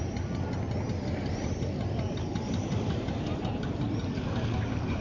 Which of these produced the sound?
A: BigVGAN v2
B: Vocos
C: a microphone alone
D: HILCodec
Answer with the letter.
C